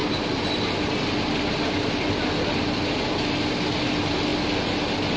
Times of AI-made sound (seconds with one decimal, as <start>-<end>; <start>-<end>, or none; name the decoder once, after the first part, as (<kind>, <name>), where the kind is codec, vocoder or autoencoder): none

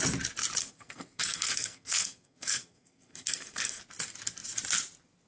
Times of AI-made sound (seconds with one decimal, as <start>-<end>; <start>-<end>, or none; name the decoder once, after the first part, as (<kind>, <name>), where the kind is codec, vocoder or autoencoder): 0.6-3.8 (codec, SNAC)

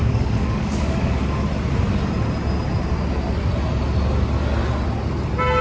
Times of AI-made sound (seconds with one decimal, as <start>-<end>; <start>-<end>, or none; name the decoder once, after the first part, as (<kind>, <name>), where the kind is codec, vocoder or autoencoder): 0.0-1.2 (codec, DAC)

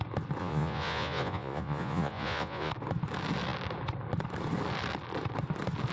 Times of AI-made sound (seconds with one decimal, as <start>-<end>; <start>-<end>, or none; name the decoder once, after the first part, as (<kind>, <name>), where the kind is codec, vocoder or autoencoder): 0.4-2.7 (vocoder, Vocos)

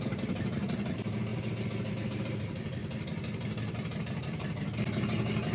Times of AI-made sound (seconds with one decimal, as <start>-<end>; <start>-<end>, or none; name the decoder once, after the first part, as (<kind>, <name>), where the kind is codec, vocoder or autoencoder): 0.0-2.8 (vocoder, BigVGAN v2); 4.0-5.5

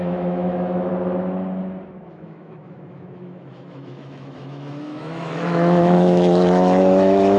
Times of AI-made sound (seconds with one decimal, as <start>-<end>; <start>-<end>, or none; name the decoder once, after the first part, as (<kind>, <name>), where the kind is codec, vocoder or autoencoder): 0.0-0.9 (autoencoder, DAC-VAE); 2.1-7.4

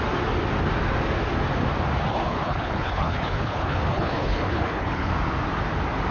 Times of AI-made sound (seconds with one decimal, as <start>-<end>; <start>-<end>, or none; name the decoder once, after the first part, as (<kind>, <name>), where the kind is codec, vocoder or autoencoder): 2.1-5.1 (codec, HILCodec)

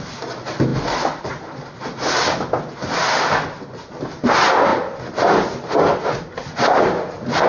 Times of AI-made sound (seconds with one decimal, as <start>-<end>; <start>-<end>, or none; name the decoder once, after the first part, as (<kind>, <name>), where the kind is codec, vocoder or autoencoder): none